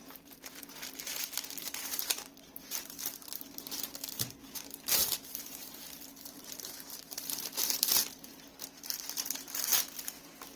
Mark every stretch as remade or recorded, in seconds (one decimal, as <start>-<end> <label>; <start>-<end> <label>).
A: 0.0-9.7 remade; 9.7-10.6 recorded